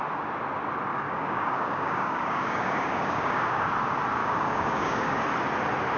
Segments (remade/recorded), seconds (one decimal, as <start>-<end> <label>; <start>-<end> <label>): 0.0-0.9 recorded; 0.9-3.7 remade; 3.7-4.2 recorded; 4.2-5.2 remade; 5.2-6.0 recorded